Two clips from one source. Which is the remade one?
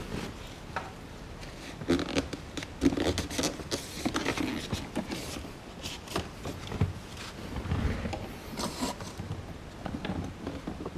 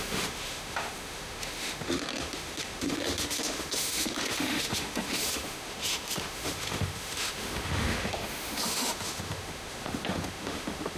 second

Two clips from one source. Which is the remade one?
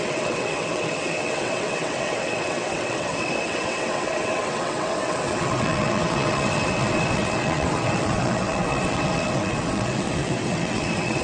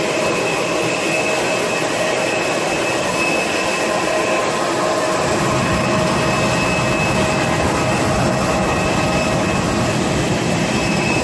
first